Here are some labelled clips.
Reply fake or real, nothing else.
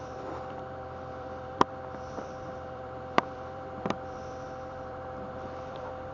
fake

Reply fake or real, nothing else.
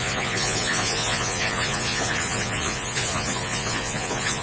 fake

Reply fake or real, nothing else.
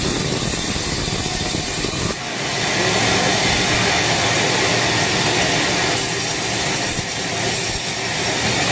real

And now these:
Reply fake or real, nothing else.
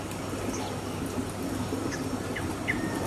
real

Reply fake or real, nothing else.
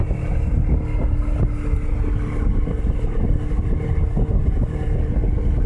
real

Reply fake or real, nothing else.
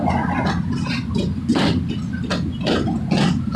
real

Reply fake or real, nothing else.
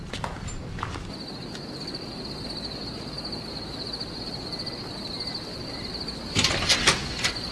real